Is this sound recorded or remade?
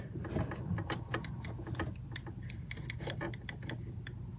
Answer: recorded